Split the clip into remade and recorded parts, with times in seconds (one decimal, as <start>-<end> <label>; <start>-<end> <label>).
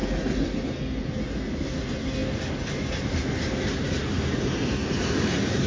0.0-5.7 recorded